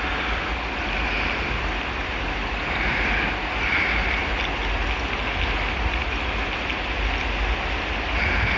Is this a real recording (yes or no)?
yes